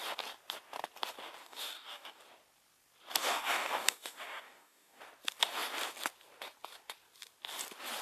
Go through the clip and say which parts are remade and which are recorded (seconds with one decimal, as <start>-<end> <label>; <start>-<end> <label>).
0.0-1.4 recorded; 1.4-2.2 remade; 2.2-3.2 recorded; 3.2-5.0 remade; 5.0-8.0 recorded